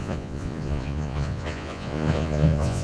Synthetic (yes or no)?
yes